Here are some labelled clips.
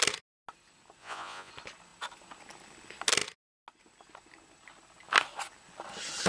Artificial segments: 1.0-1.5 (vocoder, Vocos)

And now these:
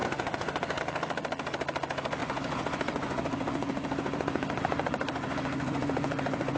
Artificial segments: 0.0-0.8 (vocoder, Vocos); 2.2-6.6

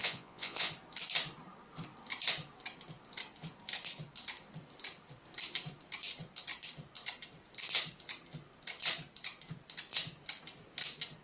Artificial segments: 0.0-0.7 (vocoder, Vocos)

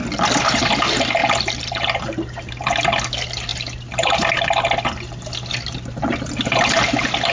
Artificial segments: none

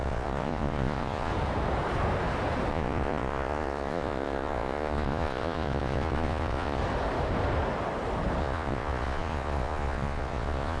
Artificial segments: 0.0-1.3 (vocoder, Vocos); 2.7-6.8; 8.4-10.8

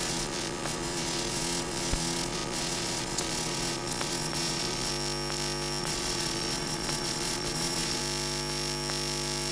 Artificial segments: 0.0-4.9 (vocoder, Vocos); 5.8-8.0